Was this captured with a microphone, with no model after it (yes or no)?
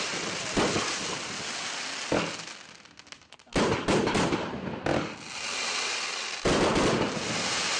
yes